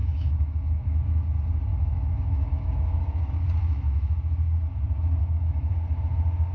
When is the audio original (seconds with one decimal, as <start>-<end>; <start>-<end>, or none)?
1.0-1.7; 2.7-3.6; 4.2-5.2; 5.7-6.5

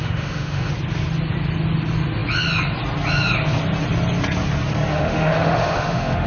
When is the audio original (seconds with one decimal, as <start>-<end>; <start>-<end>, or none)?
0.7-4.9

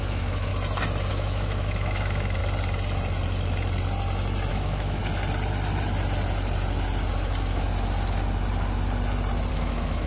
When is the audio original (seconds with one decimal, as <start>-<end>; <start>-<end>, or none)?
0.5-1.1; 2.4-4.5; 5.0-9.5

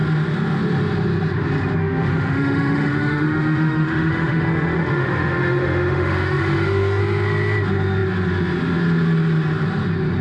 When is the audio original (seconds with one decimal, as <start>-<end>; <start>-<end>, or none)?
0.0-1.8; 7.0-10.2